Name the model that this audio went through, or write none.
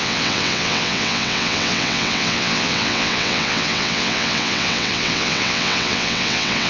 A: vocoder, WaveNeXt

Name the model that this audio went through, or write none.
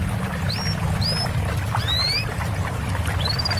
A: none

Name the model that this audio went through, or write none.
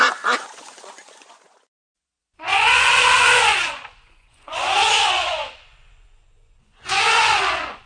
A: vocoder, Vocos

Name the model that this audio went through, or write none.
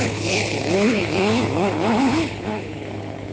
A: codec, HILCodec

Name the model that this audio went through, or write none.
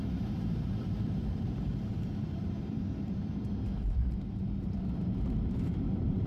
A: vocoder, BigVGAN v2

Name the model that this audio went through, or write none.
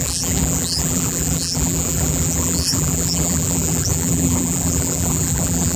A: vocoder, BigVGAN v2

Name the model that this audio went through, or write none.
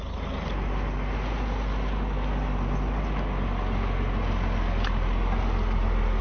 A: none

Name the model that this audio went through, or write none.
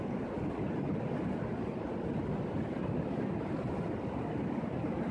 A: none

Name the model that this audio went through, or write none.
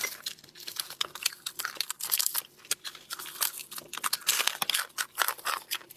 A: vocoder, BigVGAN v2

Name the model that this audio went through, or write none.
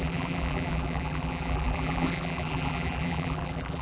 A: vocoder, BigVGAN v2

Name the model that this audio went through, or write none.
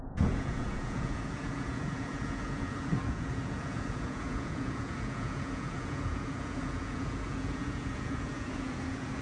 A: vocoder, Vocos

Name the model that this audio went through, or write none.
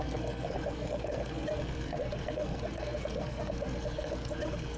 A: codec, SNAC